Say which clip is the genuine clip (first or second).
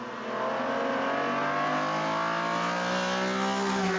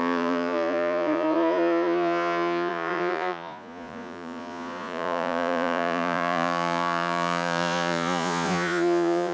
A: first